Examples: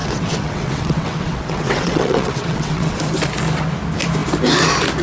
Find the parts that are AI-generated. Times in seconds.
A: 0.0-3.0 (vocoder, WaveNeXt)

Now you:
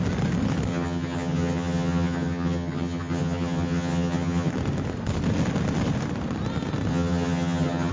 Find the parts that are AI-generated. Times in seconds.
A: 0.7-4.5 (vocoder, HiFi-GAN); 6.9-7.9

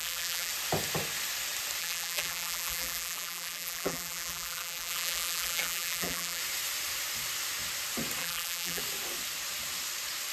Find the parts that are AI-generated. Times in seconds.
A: 0.0-0.5 (vocoder, BigVGAN v2); 1.8-6.4; 8.2-8.8

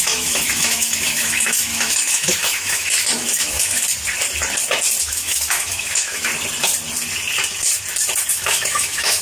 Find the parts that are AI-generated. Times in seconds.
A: 0.0-3.8 (autoencoder, DAC-VAE); 5.0-6.3; 8.3-9.2

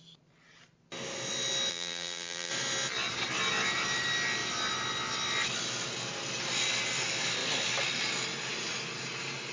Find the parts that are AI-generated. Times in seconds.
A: 1.7-2.5 (vocoder, BigVGAN v2)